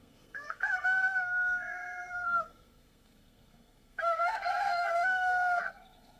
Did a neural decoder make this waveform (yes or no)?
yes